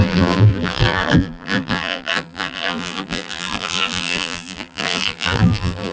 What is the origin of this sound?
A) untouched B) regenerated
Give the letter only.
B